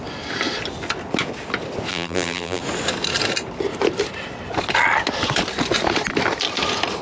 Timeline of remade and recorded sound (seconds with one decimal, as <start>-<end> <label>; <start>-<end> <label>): 0.0-1.9 recorded; 1.9-2.6 remade; 2.6-7.0 recorded